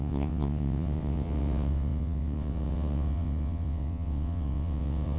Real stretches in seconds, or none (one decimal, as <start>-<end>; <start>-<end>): none